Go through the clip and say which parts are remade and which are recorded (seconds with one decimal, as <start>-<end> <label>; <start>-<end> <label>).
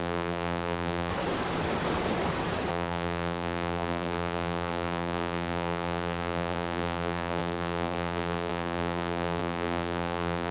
0.0-1.1 remade; 1.1-2.7 recorded; 2.7-10.5 remade